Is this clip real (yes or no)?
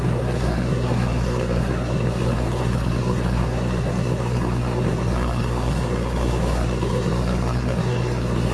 no